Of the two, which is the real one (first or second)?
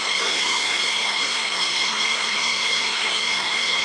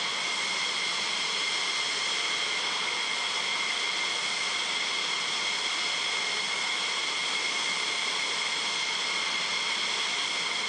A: second